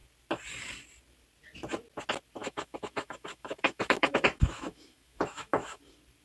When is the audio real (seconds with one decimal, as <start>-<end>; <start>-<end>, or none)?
0.0-2.4; 5.8-6.2